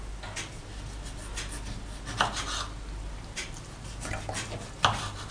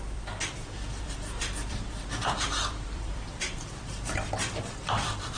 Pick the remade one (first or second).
second